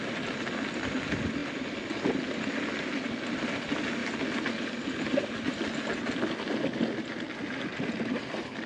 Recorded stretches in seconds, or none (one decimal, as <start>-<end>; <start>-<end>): 0.0-8.7